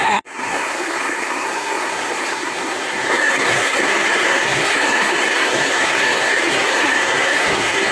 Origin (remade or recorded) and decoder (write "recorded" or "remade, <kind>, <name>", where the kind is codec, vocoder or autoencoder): remade, codec, SNAC